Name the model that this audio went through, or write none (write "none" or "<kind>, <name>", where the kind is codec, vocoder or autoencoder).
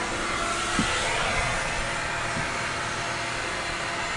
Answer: none